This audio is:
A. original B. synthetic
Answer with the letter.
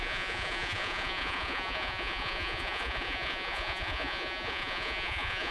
B